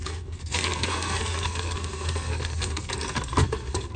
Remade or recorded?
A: remade